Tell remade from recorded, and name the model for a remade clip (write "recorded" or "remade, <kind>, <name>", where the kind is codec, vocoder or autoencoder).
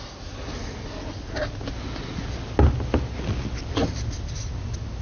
recorded